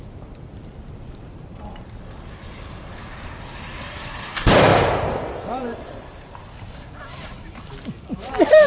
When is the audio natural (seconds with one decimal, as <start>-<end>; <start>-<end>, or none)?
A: none